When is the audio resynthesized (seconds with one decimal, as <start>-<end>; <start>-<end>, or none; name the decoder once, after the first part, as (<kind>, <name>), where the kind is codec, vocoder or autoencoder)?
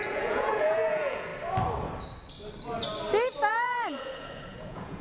0.0-1.3 (vocoder, Vocos); 3.5-5.0